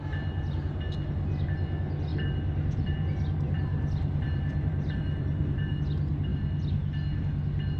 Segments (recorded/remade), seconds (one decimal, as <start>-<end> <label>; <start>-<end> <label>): 0.0-2.1 recorded; 2.1-5.8 remade; 5.8-7.8 recorded